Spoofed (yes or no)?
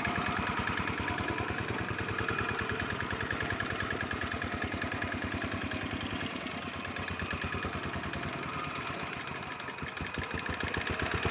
no